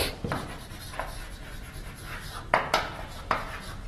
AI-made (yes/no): no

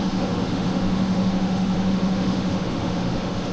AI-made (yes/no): yes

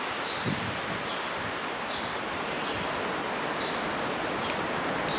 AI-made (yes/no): no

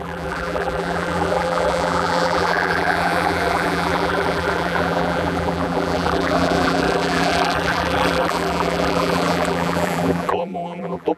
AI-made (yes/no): yes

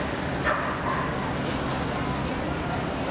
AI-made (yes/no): no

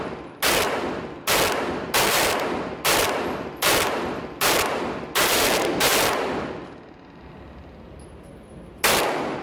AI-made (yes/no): no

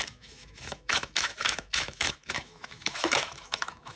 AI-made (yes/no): yes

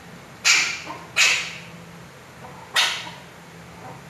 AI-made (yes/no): no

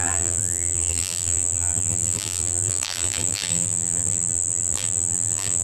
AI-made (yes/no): yes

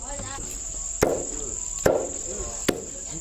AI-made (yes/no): no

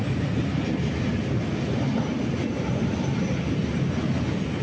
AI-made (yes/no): no